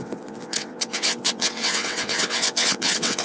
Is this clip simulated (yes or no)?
yes